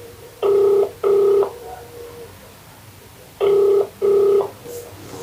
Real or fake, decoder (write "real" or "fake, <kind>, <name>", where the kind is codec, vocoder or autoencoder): real